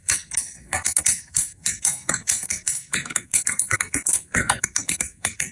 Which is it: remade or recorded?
remade